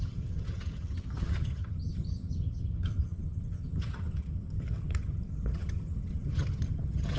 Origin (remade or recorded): remade